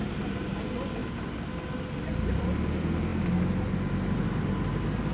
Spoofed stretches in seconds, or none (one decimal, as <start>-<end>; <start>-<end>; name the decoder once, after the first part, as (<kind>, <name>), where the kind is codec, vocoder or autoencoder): none

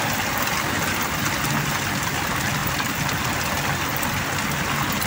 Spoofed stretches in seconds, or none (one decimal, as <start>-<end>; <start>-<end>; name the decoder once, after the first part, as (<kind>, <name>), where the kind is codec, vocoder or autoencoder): none